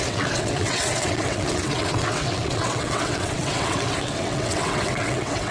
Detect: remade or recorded remade